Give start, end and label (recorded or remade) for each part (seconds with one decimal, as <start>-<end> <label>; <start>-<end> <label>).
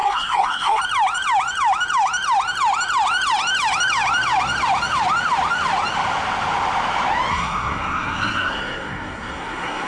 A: 0.0-0.8 remade; 0.8-7.3 recorded; 7.3-9.9 remade